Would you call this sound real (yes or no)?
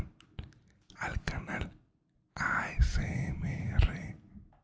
yes